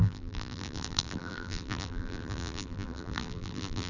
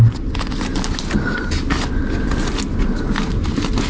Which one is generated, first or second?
first